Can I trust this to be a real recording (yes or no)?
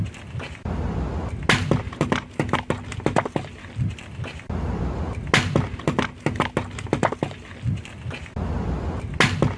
yes